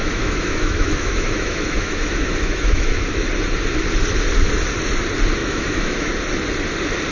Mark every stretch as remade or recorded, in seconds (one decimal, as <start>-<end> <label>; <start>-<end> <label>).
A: 0.0-3.3 remade; 3.3-5.4 recorded; 5.4-6.1 remade; 6.1-7.1 recorded